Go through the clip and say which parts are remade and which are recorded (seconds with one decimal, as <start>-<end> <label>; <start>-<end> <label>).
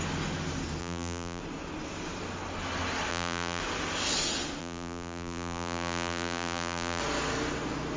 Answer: 0.0-0.8 recorded; 0.8-1.4 remade; 1.4-3.1 recorded; 3.1-3.6 remade; 3.6-4.6 recorded; 4.6-7.0 remade; 7.0-8.0 recorded